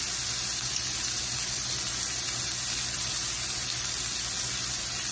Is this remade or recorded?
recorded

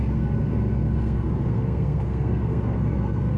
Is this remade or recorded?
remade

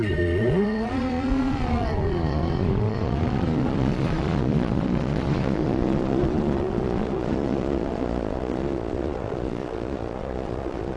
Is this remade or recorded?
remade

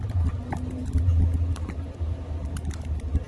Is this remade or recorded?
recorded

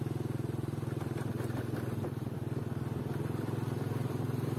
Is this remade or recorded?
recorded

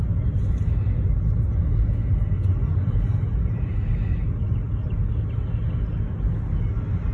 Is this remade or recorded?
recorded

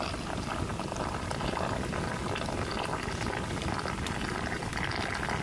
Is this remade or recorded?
recorded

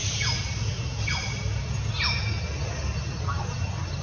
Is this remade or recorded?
recorded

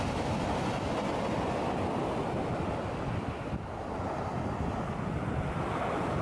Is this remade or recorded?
recorded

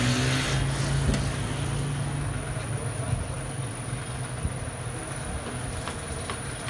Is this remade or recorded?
recorded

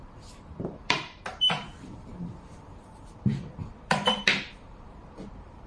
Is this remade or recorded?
remade